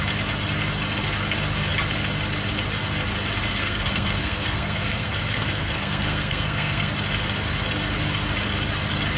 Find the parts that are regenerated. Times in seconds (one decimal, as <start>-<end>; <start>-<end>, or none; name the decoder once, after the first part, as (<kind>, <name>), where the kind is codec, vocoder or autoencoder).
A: 3.5-6.9 (codec, SNAC)